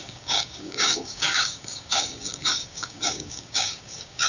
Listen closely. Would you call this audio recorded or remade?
remade